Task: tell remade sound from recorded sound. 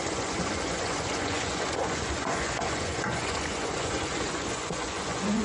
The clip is remade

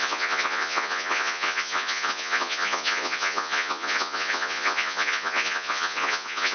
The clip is remade